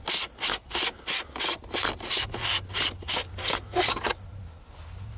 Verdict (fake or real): real